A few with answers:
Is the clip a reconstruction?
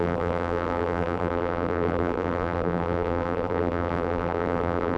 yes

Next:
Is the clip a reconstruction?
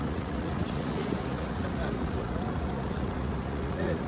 yes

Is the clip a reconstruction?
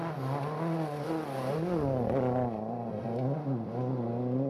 no